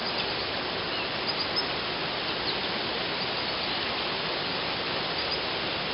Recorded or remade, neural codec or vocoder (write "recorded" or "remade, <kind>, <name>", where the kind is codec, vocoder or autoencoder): recorded